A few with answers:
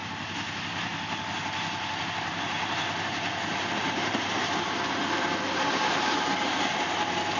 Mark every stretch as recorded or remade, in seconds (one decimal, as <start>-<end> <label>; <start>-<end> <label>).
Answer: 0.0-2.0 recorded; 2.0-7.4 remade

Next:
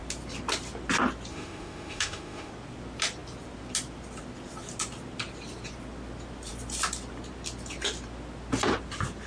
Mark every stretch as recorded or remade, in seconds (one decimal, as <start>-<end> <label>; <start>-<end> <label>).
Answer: 0.0-1.3 recorded; 1.3-2.5 remade; 2.5-9.3 recorded

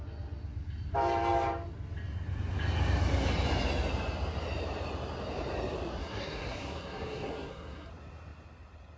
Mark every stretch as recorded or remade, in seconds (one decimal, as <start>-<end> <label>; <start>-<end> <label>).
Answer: 0.0-6.0 recorded; 6.0-7.9 remade; 7.9-9.0 recorded

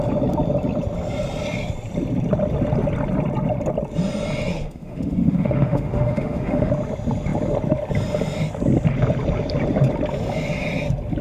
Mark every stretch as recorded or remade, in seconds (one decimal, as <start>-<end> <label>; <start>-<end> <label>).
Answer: 0.0-4.5 recorded; 4.5-6.7 remade; 6.7-11.2 recorded

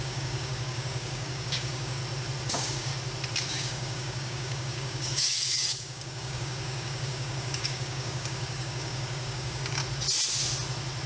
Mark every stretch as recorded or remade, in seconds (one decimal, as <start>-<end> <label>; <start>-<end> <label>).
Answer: 0.0-2.0 remade; 2.0-2.5 recorded; 2.5-2.9 remade; 2.9-3.5 recorded; 3.5-9.8 remade; 9.8-11.1 recorded